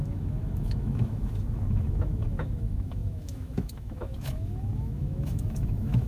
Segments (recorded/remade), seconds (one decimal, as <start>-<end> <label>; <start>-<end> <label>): 0.0-6.1 remade